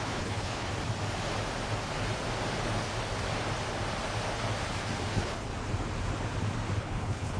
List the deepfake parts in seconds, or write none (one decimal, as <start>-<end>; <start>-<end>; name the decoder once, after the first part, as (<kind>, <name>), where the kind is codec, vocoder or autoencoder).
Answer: 0.0-0.7 (codec, HILCodec); 5.1-5.5; 6.8-7.4